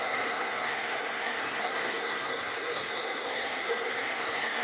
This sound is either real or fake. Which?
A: fake